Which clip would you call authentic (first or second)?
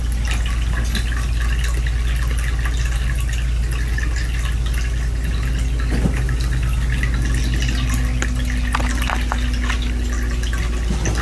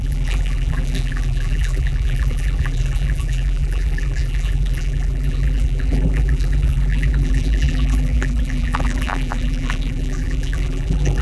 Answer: first